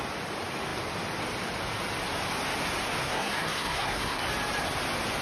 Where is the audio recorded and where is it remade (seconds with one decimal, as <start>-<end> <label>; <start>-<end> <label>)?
0.0-3.0 recorded; 3.0-4.2 remade; 4.2-5.2 recorded

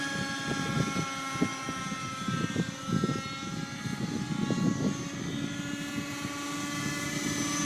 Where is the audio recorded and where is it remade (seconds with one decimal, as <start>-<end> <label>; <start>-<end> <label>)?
0.0-7.7 recorded

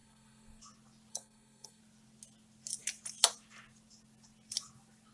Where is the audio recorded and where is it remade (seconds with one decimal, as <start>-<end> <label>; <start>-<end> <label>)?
0.0-0.6 remade; 0.6-1.1 recorded; 1.1-1.8 remade; 1.8-5.1 recorded